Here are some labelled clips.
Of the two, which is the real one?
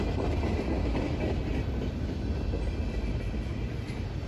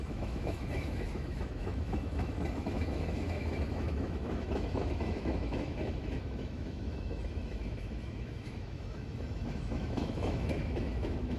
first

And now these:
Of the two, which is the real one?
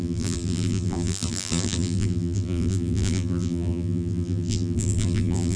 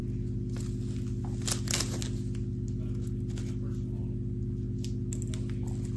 second